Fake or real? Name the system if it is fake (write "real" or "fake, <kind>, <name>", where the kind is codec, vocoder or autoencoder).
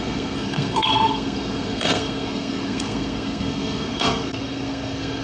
fake, codec, SNAC